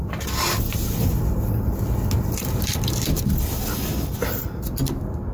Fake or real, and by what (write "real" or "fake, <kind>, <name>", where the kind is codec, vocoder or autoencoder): real